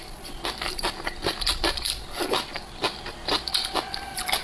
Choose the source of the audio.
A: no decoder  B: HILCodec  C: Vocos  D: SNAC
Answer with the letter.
A